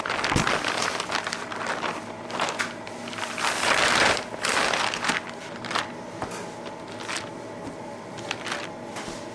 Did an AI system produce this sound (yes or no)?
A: no